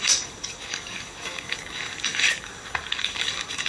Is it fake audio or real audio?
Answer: fake